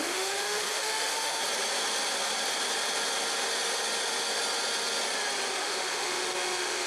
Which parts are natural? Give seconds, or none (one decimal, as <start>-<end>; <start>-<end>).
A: 1.4-5.5